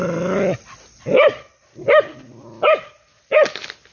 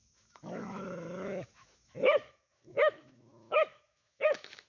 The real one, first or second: first